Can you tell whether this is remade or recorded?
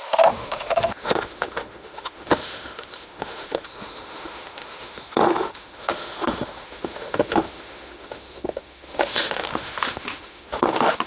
remade